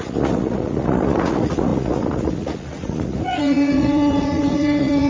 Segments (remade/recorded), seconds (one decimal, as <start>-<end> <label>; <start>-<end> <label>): 0.0-5.1 remade